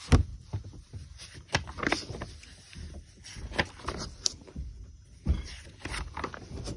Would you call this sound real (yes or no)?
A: yes